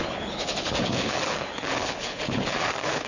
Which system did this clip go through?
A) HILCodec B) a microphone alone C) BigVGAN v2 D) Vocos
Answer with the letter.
A